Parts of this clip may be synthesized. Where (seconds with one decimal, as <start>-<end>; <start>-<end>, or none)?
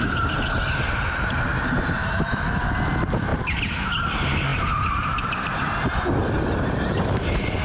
2.0-2.6